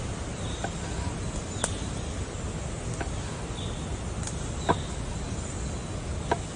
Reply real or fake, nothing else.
real